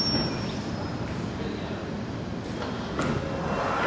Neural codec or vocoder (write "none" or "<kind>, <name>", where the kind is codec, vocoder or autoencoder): none